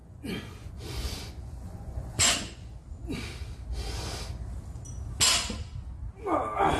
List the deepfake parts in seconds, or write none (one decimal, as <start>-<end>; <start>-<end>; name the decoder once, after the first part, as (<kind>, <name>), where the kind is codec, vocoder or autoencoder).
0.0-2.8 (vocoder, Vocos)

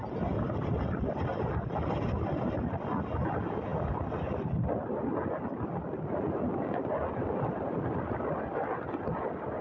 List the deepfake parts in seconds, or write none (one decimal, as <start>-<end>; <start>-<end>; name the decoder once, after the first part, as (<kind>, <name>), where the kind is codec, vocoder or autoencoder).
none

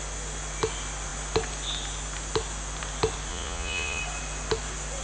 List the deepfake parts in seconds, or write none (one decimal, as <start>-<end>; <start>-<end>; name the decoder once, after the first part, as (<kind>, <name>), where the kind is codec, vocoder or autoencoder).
3.3-4.0 (vocoder, Vocos)

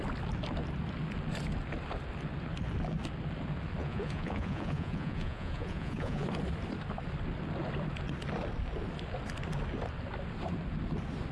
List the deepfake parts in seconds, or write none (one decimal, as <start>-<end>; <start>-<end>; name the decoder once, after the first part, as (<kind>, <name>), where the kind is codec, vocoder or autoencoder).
3.8-6.2 (vocoder, Vocos)

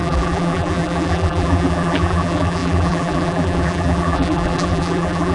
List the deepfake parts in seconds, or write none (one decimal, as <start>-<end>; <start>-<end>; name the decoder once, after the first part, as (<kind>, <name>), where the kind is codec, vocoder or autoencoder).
0.0-5.3 (vocoder, BigVGAN v2)

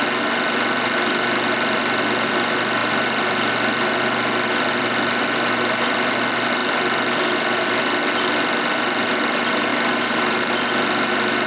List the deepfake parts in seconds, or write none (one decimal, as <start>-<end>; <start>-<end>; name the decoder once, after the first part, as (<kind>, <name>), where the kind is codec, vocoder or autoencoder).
9.7-10.5 (vocoder, BigVGAN v2)

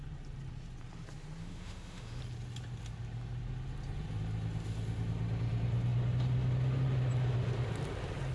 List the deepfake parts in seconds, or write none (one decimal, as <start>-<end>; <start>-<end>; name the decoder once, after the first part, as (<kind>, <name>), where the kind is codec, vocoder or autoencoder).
1.4-2.2 (autoencoder, DAC-VAE)

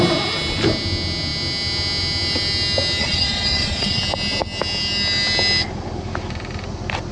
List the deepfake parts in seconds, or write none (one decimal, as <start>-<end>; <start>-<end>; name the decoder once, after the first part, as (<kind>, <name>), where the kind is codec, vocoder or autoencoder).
3.0-4.0 (vocoder, Vocos)